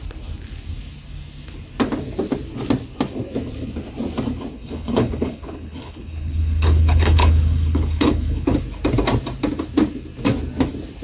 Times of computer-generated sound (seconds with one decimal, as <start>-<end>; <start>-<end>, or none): 4.5-8.6